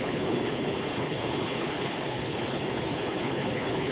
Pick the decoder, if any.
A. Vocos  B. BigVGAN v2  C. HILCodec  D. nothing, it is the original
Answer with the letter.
C